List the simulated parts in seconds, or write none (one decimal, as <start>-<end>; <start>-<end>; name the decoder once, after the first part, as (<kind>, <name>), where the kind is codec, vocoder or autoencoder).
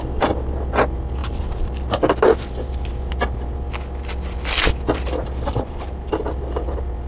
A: 1.2-1.8 (vocoder, BigVGAN v2); 5.5-6.2